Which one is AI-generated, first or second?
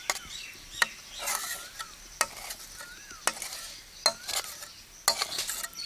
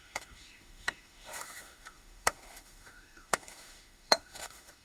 second